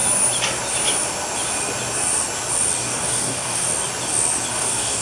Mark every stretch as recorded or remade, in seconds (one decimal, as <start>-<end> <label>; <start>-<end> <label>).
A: 0.0-2.8 recorded; 2.8-3.7 remade; 3.7-4.5 recorded; 4.5-5.0 remade

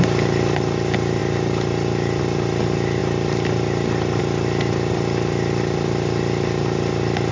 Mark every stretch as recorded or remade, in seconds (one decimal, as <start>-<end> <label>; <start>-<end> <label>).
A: 0.0-7.3 recorded